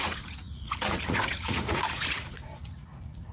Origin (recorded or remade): remade